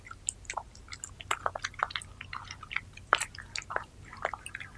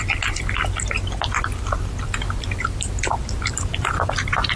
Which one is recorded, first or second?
first